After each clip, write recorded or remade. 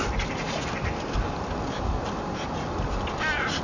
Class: recorded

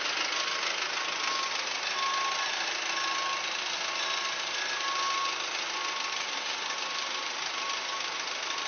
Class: recorded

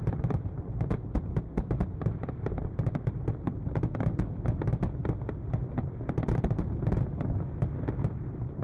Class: recorded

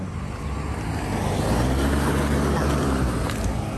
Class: recorded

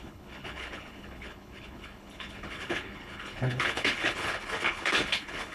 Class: remade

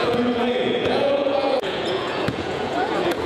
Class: remade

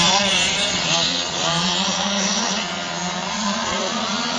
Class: remade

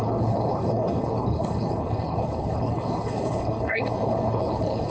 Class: remade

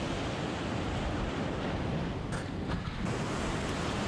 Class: recorded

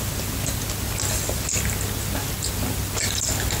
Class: recorded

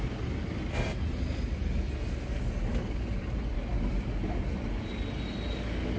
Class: recorded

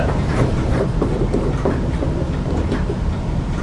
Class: remade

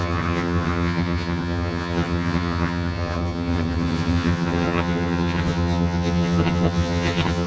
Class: remade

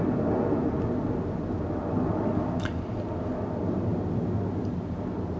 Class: recorded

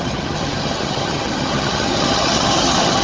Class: remade